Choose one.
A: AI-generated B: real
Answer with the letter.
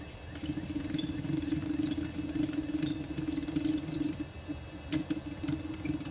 B